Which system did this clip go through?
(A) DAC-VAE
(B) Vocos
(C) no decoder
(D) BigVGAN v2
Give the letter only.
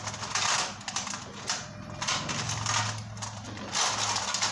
C